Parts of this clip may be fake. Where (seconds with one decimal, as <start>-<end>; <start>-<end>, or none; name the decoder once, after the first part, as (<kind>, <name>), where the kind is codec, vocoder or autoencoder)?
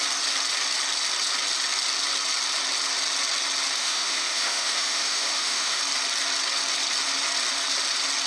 3.8-5.8 (autoencoder, DAC-VAE)